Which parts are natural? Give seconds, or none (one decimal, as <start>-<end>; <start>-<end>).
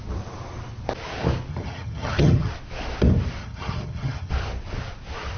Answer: 0.0-1.5; 2.5-3.4; 4.3-5.4